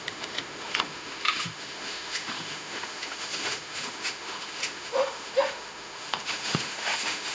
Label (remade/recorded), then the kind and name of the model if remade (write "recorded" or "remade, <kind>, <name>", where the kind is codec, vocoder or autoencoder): remade, autoencoder, DAC-VAE